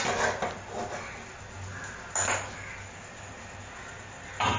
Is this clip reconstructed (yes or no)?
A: no